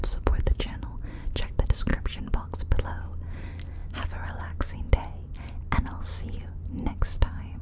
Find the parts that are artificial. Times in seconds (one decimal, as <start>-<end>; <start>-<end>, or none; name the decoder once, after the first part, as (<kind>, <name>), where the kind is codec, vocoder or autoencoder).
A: 0.0-1.1 (vocoder, Vocos)